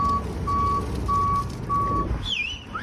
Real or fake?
real